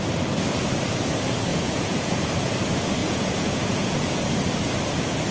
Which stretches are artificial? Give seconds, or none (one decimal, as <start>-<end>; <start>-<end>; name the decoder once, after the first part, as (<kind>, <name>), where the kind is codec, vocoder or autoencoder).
1.5-2.3 (vocoder, Vocos); 3.0-4.2